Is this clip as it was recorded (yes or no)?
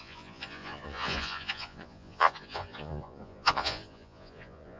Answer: no